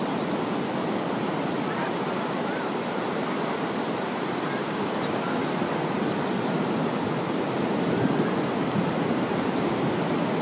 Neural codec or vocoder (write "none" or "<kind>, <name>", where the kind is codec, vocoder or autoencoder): vocoder, BigVGAN v2